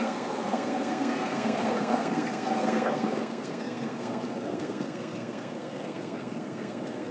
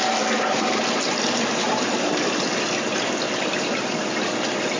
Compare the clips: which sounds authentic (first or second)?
second